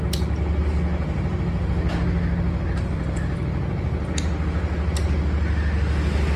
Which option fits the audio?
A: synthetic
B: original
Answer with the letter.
B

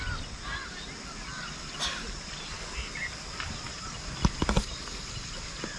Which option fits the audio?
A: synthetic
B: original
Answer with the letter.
B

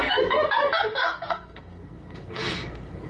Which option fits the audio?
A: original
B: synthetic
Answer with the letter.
B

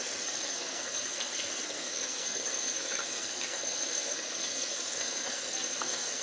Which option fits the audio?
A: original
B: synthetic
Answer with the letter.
B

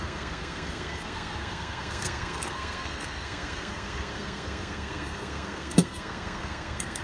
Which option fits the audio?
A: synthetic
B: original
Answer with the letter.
A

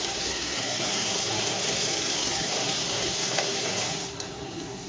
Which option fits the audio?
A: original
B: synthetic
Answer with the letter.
B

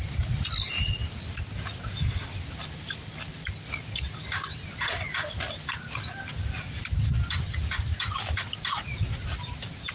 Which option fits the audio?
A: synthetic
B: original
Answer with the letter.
B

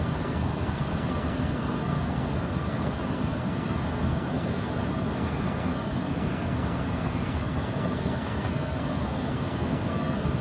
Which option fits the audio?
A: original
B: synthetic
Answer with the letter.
B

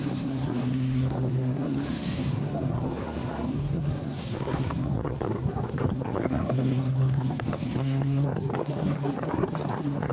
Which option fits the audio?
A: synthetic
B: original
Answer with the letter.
A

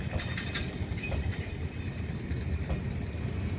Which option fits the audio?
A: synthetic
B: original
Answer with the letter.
B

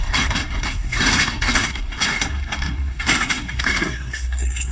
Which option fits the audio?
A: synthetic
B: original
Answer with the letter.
A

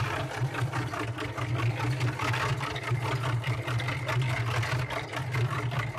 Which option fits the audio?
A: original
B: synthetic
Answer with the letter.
A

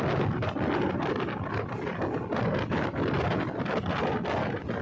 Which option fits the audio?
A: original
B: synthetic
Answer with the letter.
A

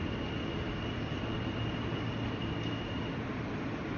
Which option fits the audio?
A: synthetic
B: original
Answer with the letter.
B